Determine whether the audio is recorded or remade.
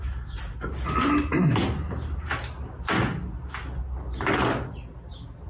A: recorded